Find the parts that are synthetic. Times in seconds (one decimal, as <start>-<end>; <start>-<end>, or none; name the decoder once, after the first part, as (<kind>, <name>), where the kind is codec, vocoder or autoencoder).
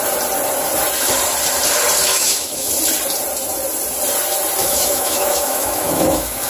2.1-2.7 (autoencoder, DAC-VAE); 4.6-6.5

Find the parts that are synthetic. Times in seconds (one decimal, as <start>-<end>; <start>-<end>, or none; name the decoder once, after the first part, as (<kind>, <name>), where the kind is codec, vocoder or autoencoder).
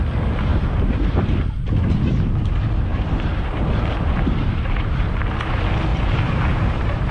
0.5-1.4 (vocoder, BigVGAN v2); 2.9-5.2; 5.9-7.1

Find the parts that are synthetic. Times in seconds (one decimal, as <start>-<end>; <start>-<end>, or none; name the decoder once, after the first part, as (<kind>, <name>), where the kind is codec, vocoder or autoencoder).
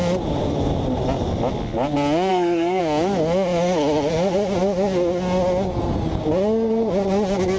2.3-2.8 (codec, SNAC)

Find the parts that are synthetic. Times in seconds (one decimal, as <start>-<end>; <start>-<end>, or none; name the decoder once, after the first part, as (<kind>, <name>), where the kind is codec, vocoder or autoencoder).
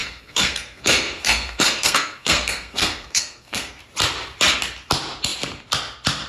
0.0-3.8 (codec, SNAC)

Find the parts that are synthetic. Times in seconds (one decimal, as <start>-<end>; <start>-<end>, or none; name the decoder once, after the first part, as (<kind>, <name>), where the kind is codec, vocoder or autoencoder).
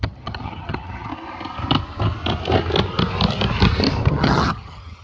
0.0-1.1 (vocoder, HiFi-GAN); 4.1-5.0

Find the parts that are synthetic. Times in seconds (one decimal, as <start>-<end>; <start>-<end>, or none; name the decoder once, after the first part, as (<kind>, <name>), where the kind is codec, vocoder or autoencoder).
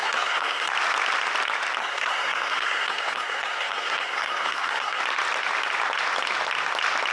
0.0-0.7 (codec, SNAC); 1.8-5.0